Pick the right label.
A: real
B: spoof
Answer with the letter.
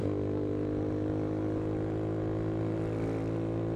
A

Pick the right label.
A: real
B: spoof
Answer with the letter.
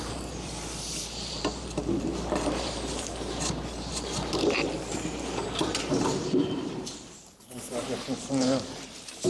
B